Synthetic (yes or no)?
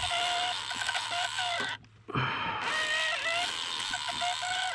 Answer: no